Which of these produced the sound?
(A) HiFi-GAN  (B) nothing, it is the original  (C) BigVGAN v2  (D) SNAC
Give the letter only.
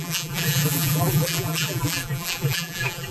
C